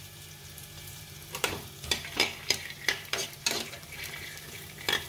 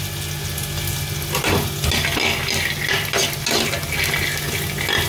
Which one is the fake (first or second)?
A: first